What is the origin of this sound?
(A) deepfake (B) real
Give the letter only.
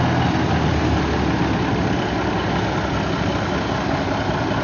B